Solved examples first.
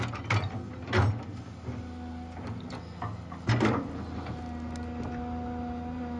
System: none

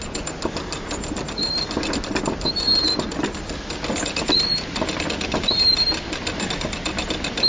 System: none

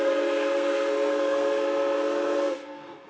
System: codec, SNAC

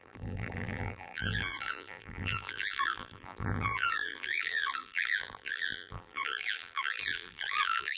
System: vocoder, BigVGAN v2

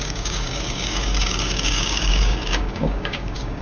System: codec, DAC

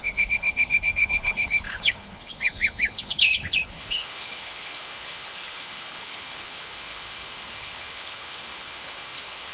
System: codec, HILCodec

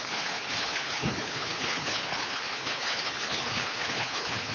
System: codec, HILCodec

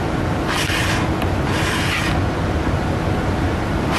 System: none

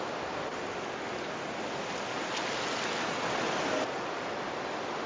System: none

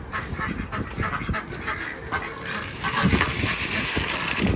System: none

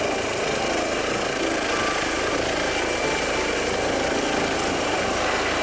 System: none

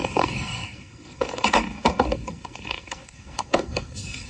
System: codec, SNAC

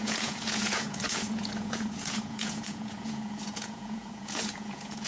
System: vocoder, Vocos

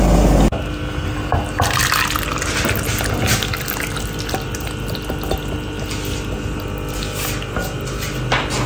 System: none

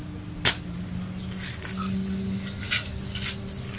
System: none